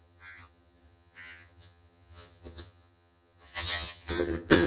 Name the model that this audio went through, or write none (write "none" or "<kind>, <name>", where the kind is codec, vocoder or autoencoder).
vocoder, HiFi-GAN